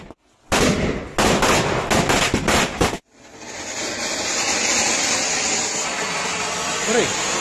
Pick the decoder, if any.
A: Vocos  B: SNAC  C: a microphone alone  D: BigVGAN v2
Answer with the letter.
C